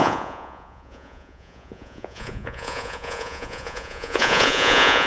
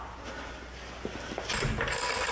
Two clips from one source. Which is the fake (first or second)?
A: first